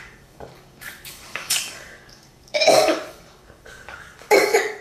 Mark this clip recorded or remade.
remade